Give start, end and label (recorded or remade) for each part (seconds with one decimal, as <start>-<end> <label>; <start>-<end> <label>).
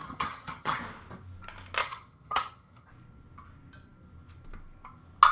0.0-0.8 remade; 0.8-1.8 recorded; 1.8-2.9 remade; 2.9-5.3 recorded